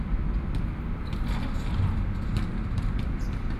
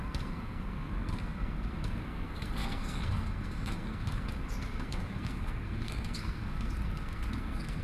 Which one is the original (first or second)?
first